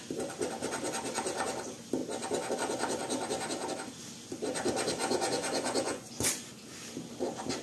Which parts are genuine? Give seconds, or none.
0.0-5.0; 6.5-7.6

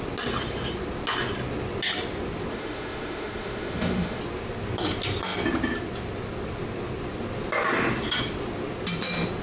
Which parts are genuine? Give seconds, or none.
0.0-2.5; 4.2-9.4

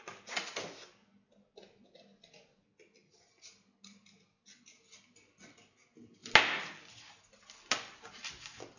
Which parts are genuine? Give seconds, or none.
0.0-8.8

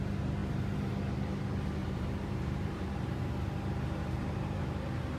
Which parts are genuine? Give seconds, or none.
0.0-1.8; 3.3-4.0; 4.6-5.2

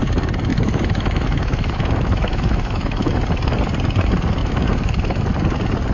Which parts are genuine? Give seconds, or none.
0.0-0.5; 3.1-4.4; 5.3-5.9

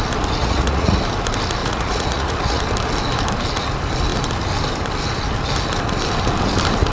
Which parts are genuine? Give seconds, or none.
0.0-0.4; 1.0-1.6; 2.6-6.9

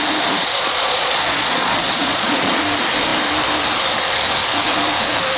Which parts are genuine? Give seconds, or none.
0.0-0.4; 2.6-5.4

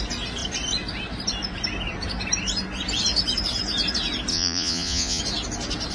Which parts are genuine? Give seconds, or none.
0.0-4.3; 5.2-5.9